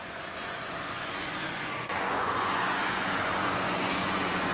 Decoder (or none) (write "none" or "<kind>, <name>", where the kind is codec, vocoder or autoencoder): vocoder, Vocos